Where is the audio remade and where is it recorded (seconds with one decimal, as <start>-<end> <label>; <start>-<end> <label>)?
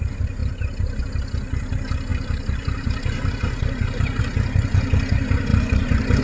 0.0-2.1 recorded; 2.1-4.2 remade; 4.2-5.5 recorded; 5.5-6.2 remade